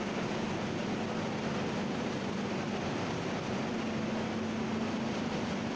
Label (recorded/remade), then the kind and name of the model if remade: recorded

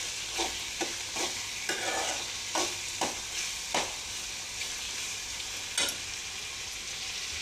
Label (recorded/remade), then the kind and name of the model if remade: recorded